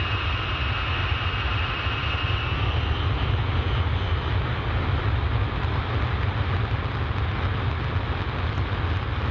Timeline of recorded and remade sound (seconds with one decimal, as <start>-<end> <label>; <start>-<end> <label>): 0.0-1.0 recorded; 1.0-3.4 remade; 3.4-4.4 recorded; 4.4-5.2 remade; 5.2-9.3 recorded